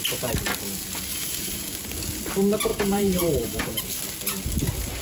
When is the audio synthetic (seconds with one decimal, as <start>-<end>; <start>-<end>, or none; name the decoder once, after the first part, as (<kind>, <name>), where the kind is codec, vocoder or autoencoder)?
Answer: 1.1-1.7 (vocoder, BigVGAN v2); 2.7-3.8